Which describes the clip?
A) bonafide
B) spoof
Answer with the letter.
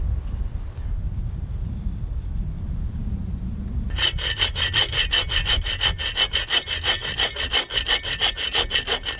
A